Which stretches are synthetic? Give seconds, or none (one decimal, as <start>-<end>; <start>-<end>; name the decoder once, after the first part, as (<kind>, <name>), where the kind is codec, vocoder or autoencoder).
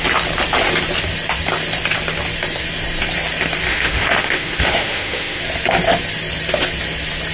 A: 3.7-5.4 (autoencoder, DAC-VAE)